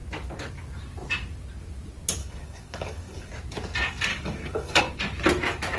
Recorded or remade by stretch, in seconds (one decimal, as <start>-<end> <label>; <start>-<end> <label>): 0.0-2.2 recorded; 2.2-3.3 remade; 3.3-4.1 recorded; 4.1-4.8 remade; 4.8-5.8 recorded